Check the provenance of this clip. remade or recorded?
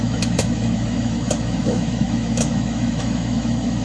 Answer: remade